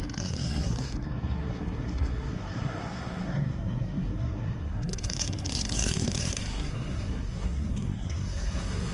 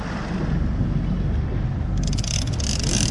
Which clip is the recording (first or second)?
second